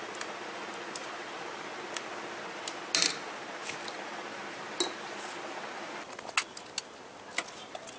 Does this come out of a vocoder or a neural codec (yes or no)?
no